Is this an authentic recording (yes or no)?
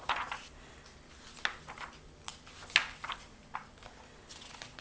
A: yes